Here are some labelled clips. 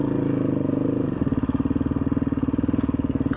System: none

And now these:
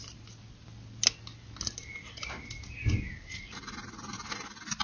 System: none